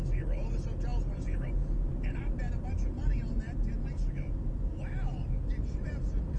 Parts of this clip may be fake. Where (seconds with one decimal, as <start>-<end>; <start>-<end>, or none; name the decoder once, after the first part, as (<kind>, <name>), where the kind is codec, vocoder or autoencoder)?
none